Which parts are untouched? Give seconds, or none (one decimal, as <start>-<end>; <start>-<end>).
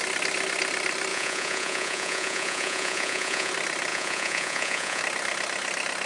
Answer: 0.0-1.1; 3.5-3.9; 5.0-6.1